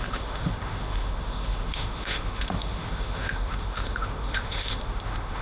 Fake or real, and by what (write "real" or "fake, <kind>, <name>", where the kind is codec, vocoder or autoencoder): fake, autoencoder, DAC-VAE